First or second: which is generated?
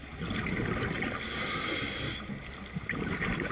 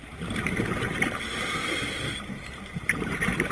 second